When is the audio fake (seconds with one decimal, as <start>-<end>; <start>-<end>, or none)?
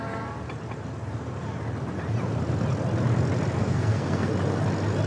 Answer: 3.6-4.3